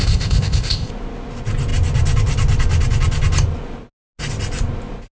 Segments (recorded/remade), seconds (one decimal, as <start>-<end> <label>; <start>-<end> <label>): 0.0-0.9 remade; 0.9-5.1 recorded